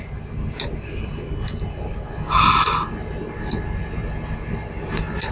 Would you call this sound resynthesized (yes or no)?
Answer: no